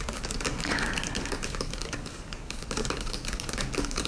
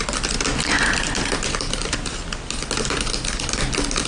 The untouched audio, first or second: second